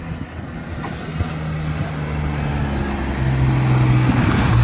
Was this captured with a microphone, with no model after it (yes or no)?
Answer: yes